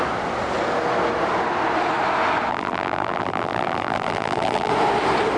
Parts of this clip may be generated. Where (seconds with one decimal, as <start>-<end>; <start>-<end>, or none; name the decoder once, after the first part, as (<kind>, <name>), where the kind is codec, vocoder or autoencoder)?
2.5-4.7 (vocoder, BigVGAN v2)